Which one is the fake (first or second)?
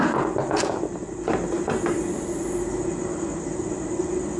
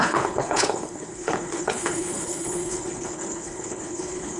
second